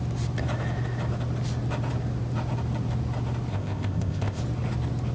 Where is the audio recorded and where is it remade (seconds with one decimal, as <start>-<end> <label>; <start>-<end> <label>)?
0.0-3.5 recorded; 3.5-4.4 remade; 4.4-5.1 recorded